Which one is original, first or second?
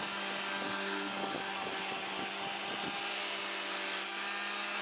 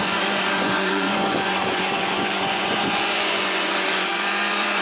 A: first